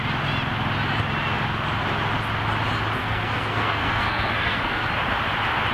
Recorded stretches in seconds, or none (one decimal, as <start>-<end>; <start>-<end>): 0.0-3.0; 4.9-5.7